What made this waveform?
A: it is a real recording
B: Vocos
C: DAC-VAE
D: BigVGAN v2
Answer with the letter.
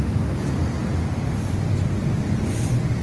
A